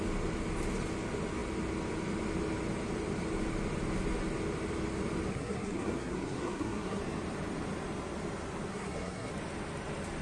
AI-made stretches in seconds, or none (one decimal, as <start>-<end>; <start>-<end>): 5.3-7.0; 8.7-9.3